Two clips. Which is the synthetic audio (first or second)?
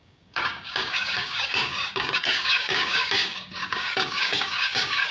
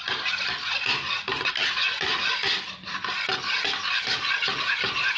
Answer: first